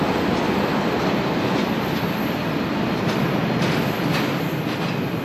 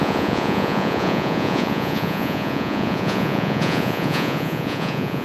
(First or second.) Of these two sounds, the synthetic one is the second